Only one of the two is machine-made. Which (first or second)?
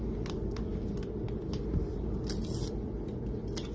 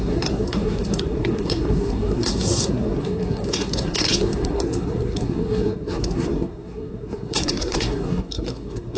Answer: second